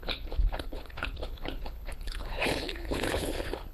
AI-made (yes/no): yes